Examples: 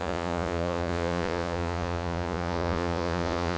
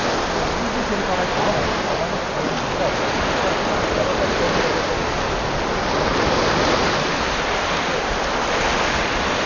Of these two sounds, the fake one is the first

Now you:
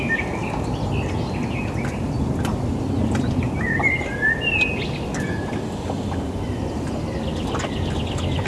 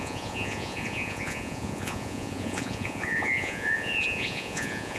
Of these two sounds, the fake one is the second